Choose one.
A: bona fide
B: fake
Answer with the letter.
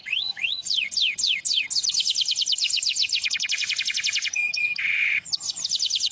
B